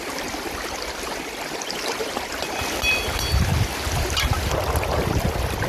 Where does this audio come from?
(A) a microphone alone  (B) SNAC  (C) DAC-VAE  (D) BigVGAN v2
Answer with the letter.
D